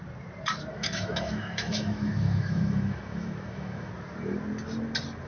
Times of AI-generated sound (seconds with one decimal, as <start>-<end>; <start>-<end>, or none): 0.7-3.9